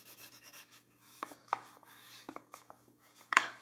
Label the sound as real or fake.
fake